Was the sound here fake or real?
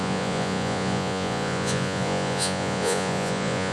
fake